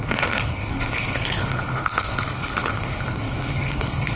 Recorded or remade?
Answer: remade